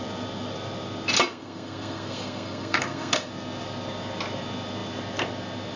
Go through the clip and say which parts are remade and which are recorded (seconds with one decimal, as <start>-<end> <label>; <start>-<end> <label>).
0.0-1.3 recorded; 1.3-3.3 remade; 3.3-5.8 recorded